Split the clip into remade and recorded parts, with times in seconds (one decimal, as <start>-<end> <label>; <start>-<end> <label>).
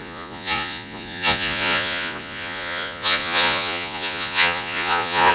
0.0-5.3 remade